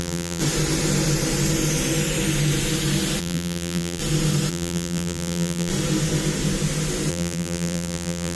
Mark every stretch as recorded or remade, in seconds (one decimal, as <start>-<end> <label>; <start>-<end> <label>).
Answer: 0.0-0.4 remade; 0.4-3.2 recorded; 3.2-4.0 remade; 4.0-4.5 recorded; 4.5-5.7 remade; 5.7-7.1 recorded; 7.1-8.3 remade